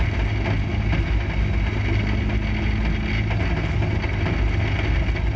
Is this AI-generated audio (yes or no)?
no